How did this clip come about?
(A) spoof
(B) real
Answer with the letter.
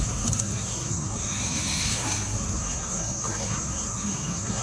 A